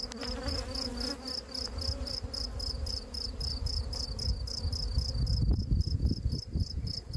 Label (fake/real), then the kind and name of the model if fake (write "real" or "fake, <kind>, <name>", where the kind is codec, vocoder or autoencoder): real